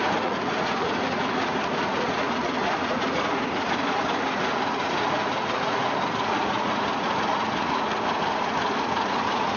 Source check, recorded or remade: remade